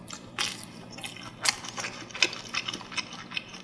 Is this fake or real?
real